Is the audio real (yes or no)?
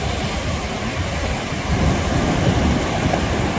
yes